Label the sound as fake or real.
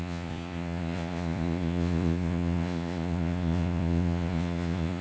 fake